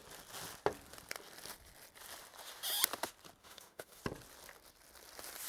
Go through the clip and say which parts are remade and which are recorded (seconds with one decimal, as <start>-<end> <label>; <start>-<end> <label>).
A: 0.0-3.4 recorded; 3.4-4.0 remade; 4.0-5.5 recorded